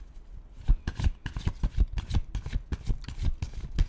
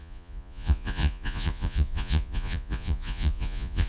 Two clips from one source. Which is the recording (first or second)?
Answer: first